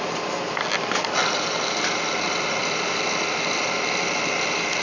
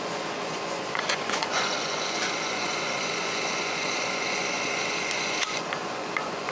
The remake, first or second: second